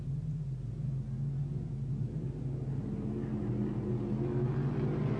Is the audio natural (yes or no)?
yes